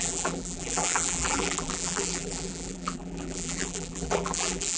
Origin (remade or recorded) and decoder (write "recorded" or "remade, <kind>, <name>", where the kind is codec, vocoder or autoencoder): remade, vocoder, BigVGAN v2